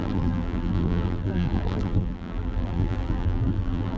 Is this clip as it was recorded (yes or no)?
no